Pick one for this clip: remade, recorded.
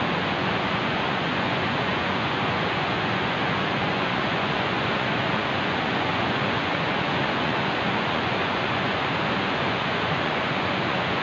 remade